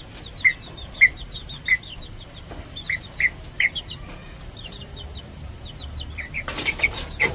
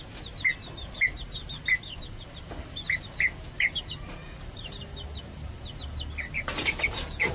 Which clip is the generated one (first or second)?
first